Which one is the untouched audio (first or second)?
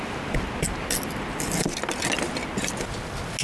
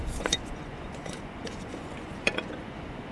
first